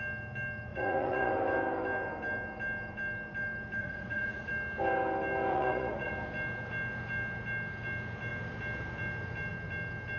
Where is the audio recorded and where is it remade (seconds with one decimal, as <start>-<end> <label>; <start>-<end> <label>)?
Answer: 0.0-0.7 recorded; 0.7-1.3 remade; 1.3-3.8 recorded; 3.8-4.5 remade; 4.5-5.5 recorded; 5.5-6.1 remade; 6.1-10.2 recorded